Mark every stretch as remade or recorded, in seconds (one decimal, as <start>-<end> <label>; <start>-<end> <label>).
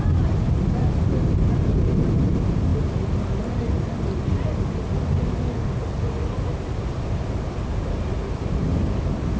0.0-9.4 recorded